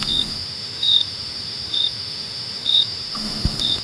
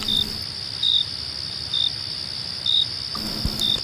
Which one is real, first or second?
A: second